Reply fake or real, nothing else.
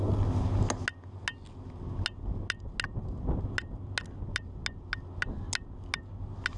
real